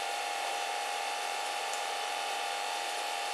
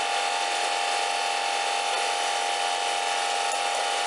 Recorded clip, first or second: second